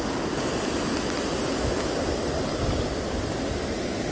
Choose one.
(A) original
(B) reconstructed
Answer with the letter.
A